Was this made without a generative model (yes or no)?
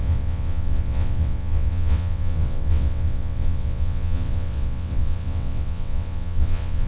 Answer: no